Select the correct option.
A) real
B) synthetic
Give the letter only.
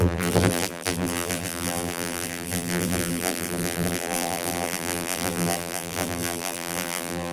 B